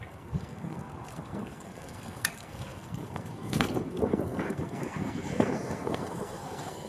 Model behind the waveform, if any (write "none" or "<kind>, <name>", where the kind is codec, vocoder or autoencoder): codec, SNAC